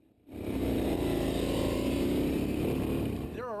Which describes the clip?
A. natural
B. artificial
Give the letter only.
A